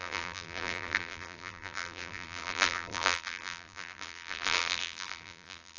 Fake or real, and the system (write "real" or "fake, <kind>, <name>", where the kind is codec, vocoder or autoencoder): fake, vocoder, BigVGAN v2